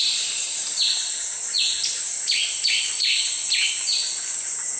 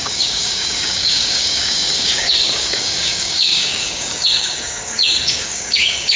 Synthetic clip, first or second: second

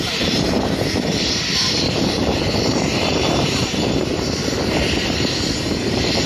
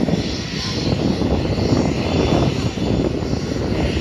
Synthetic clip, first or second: first